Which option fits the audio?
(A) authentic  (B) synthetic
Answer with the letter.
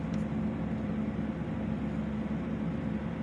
A